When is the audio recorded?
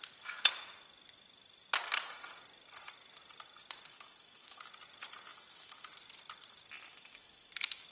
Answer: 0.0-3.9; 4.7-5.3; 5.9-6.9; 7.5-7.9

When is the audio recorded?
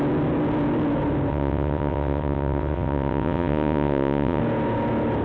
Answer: 0.0-1.3; 4.4-5.2